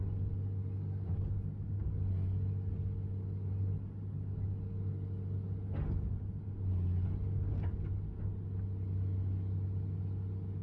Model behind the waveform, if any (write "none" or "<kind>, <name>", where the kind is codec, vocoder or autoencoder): none